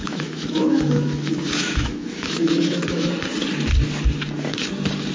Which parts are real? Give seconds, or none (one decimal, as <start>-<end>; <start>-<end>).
3.1-5.1